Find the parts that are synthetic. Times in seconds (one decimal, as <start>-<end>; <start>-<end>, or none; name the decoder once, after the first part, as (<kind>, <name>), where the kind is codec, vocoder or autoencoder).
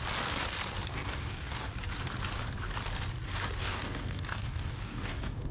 0.9-1.7 (codec, DAC); 3.6-5.5